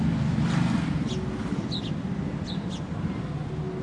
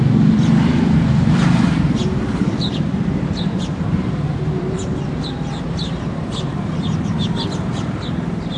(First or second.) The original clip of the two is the first